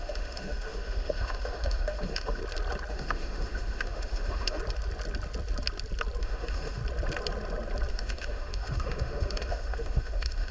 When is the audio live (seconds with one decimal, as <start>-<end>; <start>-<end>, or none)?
2.4-2.9; 4.6-6.2; 6.8-7.9